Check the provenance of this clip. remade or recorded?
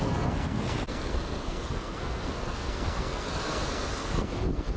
remade